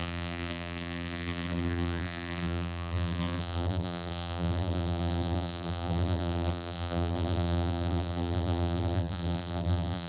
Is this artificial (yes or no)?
yes